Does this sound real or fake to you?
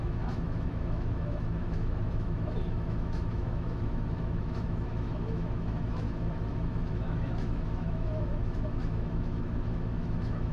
fake